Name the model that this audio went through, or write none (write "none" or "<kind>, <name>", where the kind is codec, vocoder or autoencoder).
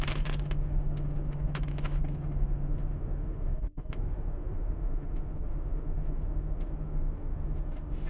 autoencoder, DAC-VAE